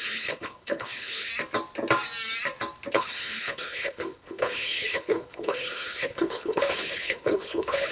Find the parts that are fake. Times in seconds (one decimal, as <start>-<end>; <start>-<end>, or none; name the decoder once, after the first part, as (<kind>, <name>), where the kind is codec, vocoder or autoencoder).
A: 0.0-1.3 (codec, HILCodec); 2.9-7.9